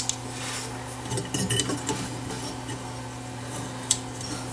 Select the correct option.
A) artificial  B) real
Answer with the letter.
B